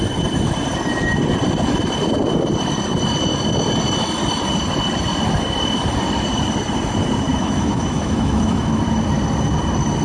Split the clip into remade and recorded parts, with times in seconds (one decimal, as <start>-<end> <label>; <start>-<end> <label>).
0.0-7.3 recorded; 7.3-8.8 remade; 8.8-10.0 recorded